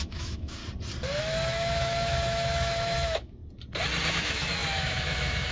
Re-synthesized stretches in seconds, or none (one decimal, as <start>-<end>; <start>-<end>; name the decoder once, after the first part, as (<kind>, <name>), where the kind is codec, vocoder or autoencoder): 0.0-0.6 (autoencoder, DAC-VAE); 1.2-3.4; 4.1-5.5

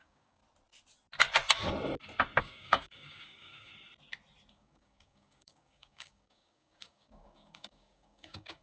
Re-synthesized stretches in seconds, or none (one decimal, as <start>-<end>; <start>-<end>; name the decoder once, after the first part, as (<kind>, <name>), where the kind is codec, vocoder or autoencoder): 0.0-0.4 (codec, DAC); 2.4-3.7; 4.5-8.6

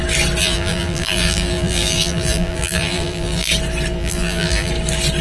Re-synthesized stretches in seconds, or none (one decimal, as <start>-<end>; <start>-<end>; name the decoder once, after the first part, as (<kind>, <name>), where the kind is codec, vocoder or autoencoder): 0.4-3.5 (vocoder, BigVGAN v2); 4.0-4.7

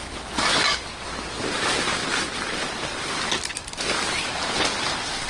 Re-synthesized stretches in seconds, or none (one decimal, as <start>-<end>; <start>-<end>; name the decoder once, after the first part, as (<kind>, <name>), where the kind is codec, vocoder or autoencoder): none